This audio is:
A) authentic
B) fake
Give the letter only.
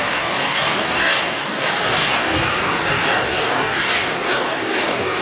B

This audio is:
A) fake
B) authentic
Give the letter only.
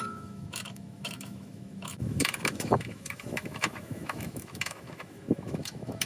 A